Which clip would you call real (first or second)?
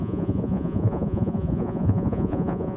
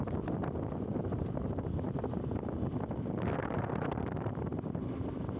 second